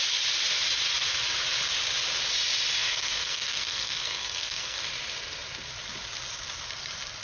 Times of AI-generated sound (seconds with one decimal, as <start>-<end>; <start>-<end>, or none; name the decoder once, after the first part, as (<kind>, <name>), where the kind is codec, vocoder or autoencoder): 2.8-4.8 (codec, SNAC)